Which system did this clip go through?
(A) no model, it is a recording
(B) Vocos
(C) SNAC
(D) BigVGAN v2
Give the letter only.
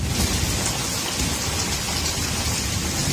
A